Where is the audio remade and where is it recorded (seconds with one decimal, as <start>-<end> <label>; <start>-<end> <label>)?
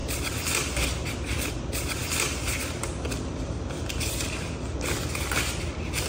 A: 0.0-6.1 recorded